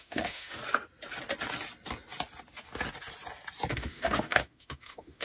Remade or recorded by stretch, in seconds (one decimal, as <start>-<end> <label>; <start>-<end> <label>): 0.0-0.6 remade; 0.6-3.7 recorded; 3.7-5.2 remade